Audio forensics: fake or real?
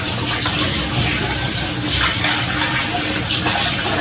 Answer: real